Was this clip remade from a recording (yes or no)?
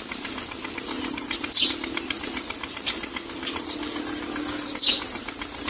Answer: yes